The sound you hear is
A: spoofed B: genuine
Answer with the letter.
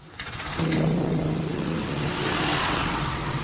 A